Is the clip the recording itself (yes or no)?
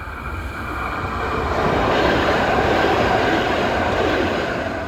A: no